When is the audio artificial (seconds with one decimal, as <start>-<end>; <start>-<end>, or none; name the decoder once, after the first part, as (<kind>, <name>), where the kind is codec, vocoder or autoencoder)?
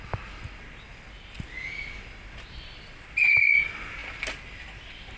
none